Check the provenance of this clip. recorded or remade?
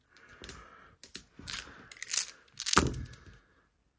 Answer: recorded